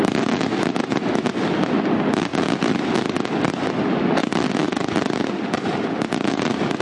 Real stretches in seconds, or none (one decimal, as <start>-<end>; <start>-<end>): 0.0-2.3; 2.8-4.2; 6.3-6.8